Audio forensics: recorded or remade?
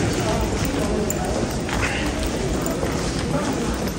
recorded